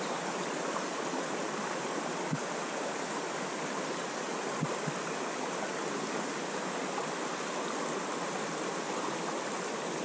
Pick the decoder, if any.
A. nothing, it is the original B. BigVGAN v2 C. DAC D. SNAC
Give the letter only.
A